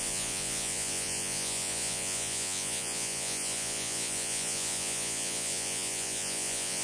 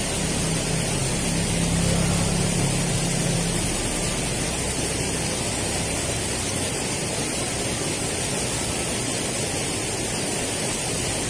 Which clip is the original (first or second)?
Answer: second